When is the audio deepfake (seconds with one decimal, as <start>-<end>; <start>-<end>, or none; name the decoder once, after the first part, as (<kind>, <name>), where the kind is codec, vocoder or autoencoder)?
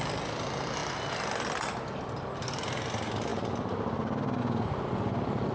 none